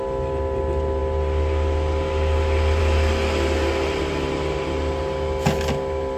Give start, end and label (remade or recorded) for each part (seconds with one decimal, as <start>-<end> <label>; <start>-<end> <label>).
0.0-6.2 recorded